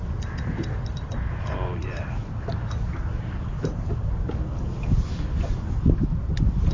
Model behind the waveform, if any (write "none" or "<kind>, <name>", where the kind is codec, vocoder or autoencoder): none